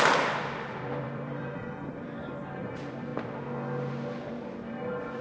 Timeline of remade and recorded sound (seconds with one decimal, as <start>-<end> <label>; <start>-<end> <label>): 0.0-3.1 remade; 3.1-4.2 recorded; 4.2-5.2 remade